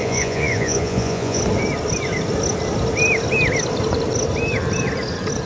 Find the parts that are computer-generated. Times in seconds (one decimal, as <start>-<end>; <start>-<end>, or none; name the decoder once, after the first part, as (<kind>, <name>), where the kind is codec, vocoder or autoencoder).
0.0-1.4 (vocoder, Vocos)